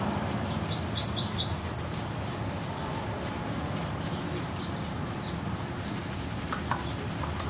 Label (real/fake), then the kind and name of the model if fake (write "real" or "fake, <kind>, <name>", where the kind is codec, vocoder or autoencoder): real